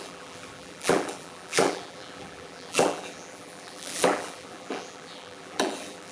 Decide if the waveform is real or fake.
fake